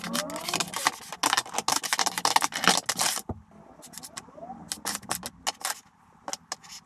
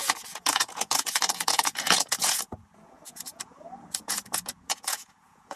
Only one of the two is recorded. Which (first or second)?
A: first